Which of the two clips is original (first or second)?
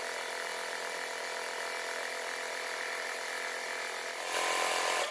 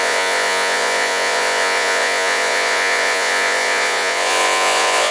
first